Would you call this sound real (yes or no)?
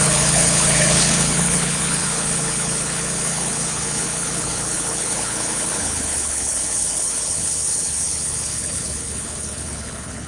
no